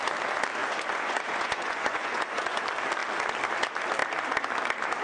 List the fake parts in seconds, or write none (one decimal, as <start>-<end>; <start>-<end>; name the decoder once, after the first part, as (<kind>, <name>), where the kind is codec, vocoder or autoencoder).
0.6-2.6 (vocoder, Vocos)